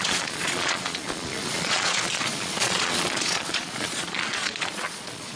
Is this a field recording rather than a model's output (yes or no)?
no